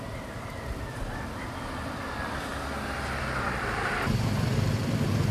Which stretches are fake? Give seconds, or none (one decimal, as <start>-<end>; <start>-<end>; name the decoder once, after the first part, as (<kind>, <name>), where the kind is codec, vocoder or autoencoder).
0.0-2.5 (vocoder, BigVGAN v2); 3.2-5.3